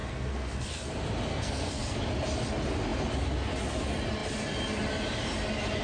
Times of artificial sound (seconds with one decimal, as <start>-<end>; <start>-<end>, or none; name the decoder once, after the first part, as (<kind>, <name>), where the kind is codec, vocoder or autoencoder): 0.0-0.9 (codec, SNAC); 1.3-2.0